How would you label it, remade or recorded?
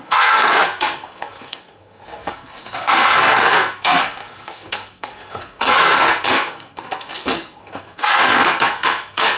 remade